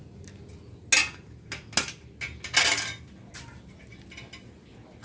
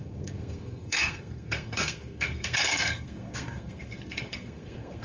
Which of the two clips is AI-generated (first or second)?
second